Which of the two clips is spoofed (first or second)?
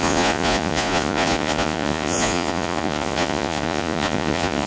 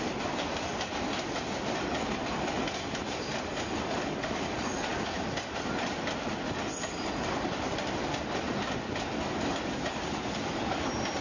first